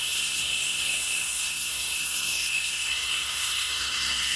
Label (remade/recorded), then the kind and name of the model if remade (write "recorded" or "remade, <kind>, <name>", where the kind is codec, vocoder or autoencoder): remade, codec, SNAC